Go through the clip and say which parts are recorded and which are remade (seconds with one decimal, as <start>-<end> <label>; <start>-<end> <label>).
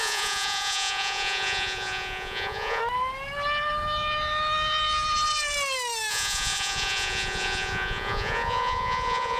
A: 0.0-2.8 remade; 2.8-6.1 recorded; 6.1-9.4 remade